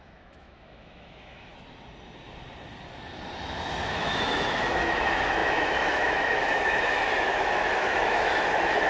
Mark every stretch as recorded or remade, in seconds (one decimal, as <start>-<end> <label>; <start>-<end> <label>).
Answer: 0.0-1.5 remade; 1.5-3.9 recorded; 3.9-8.9 remade